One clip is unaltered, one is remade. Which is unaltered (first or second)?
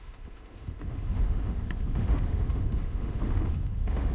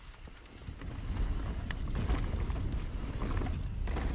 second